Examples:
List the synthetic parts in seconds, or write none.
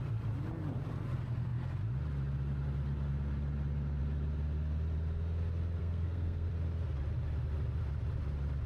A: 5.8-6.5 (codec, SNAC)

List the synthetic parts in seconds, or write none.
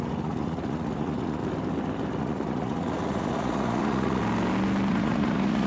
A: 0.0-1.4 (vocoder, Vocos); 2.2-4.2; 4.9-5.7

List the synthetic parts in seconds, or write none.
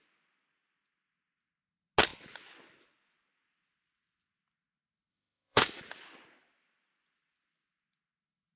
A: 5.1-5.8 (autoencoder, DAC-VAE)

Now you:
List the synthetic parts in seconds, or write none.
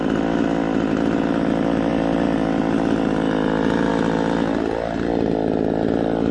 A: none